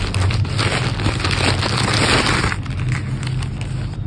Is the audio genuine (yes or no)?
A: yes